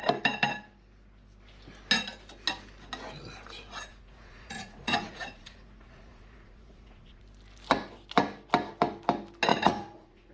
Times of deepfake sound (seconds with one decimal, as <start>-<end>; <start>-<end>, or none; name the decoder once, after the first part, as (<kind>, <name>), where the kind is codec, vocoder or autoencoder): 3.9-7.2 (vocoder, Vocos); 9.5-10.3